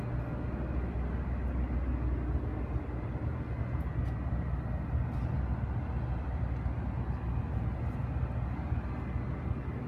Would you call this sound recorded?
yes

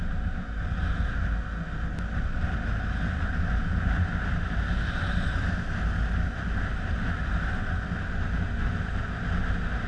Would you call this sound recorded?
yes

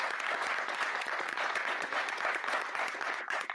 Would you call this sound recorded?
no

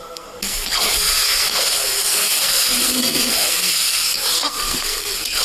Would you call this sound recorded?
no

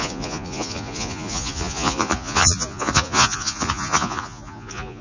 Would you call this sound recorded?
no